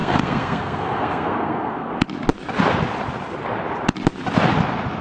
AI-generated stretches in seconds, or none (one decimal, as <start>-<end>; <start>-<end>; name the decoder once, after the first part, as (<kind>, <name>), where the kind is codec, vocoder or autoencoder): 0.0-1.9 (codec, SNAC)